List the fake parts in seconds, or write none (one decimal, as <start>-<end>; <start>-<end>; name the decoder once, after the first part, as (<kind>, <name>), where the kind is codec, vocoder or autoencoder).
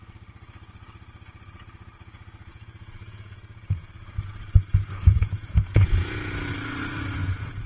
2.5-3.9 (vocoder, Vocos); 5.1-6.5; 7.2-7.7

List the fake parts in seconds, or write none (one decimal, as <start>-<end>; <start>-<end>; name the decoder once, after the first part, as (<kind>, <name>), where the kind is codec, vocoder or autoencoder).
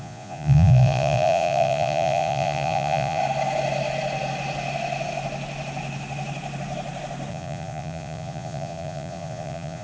0.0-3.2 (vocoder, Vocos); 7.3-9.8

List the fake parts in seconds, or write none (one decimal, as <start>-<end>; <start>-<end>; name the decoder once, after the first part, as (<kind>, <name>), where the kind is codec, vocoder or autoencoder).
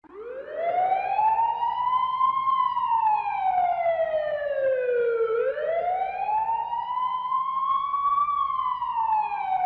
7.1-8.2 (vocoder, Vocos)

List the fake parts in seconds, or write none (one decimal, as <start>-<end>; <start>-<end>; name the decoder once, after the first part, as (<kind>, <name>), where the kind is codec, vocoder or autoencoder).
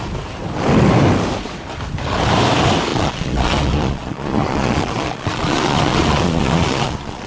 2.9-7.3 (vocoder, Vocos)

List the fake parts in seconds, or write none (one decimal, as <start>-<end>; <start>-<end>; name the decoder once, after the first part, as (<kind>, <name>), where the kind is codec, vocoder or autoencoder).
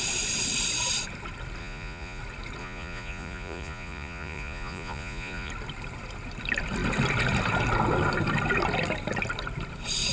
1.6-2.2 (vocoder, Vocos); 2.6-5.5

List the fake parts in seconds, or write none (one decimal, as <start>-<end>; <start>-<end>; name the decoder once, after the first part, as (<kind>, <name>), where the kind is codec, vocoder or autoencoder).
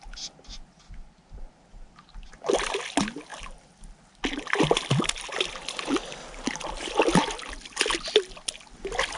none